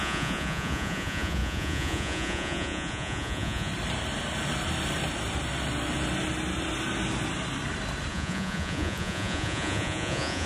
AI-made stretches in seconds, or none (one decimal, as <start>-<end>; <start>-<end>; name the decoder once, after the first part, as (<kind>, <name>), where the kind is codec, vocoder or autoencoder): 0.0-3.7 (vocoder, Vocos); 8.1-10.5